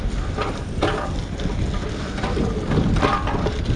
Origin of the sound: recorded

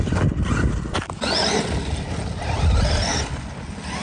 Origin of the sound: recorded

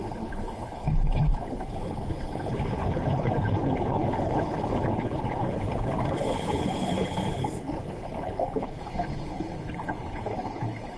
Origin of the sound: remade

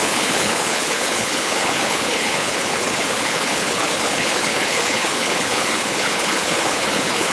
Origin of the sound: remade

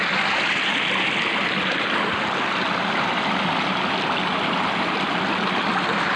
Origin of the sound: recorded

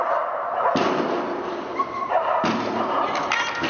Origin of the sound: recorded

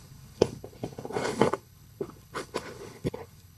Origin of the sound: remade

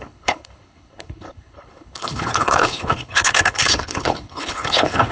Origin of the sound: remade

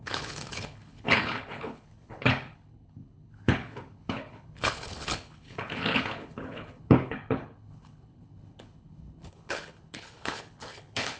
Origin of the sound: remade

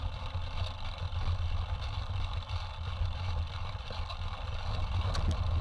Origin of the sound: recorded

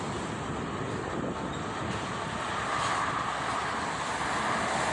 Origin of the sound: recorded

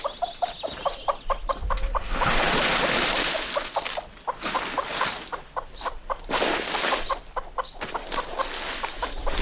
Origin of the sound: recorded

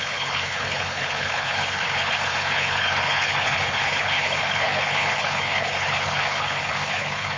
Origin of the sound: remade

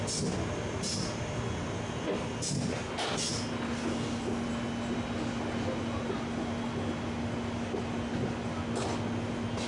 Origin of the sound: recorded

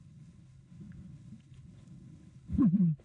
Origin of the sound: remade